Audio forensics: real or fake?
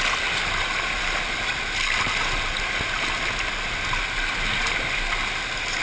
real